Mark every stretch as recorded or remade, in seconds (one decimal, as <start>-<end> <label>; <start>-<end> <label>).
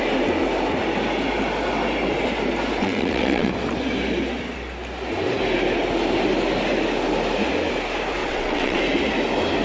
0.0-2.8 recorded; 2.8-3.5 remade; 3.5-8.2 recorded; 8.2-8.8 remade; 8.8-9.6 recorded